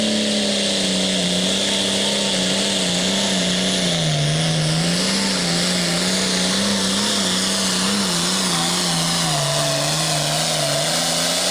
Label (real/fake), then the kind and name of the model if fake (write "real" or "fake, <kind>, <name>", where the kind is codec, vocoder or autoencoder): real